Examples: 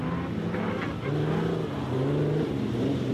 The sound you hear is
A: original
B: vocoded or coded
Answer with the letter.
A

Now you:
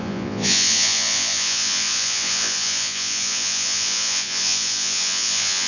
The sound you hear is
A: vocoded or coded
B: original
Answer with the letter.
A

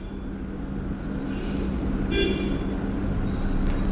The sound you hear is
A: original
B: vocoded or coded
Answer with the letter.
A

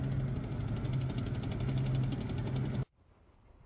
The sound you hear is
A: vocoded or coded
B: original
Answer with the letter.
B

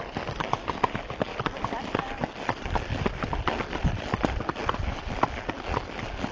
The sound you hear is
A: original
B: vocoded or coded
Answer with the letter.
A